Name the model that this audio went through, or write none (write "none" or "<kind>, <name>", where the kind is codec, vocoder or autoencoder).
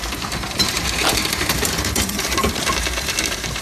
vocoder, BigVGAN v2